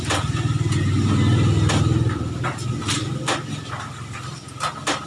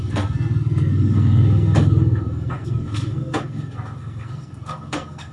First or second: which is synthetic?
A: second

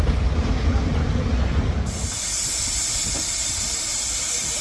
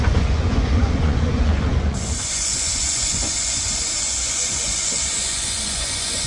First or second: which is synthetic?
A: second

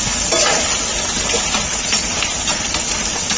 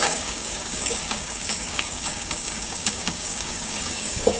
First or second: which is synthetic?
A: second